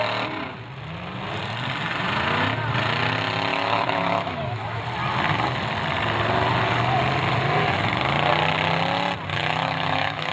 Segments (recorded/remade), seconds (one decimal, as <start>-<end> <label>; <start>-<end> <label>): 0.0-3.5 recorded; 3.5-4.8 remade; 4.8-9.3 recorded; 9.3-10.3 remade